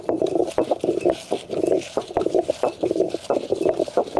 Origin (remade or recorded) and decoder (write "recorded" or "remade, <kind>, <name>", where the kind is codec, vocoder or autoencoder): recorded